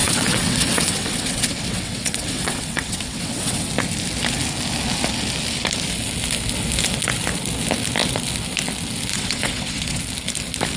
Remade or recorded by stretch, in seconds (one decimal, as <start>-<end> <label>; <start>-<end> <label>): 0.0-3.7 remade; 3.7-9.1 recorded; 9.1-10.0 remade; 10.0-10.8 recorded